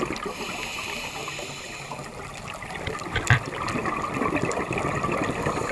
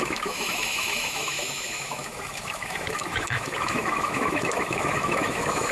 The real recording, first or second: first